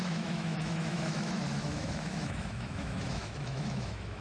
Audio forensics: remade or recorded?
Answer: remade